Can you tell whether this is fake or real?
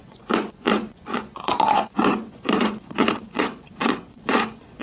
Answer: fake